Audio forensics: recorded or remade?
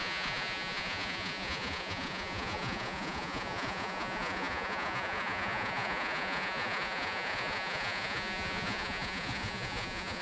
remade